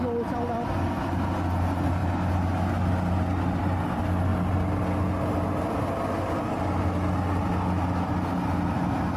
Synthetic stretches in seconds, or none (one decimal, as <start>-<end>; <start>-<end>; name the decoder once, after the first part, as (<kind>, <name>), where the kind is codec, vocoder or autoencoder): none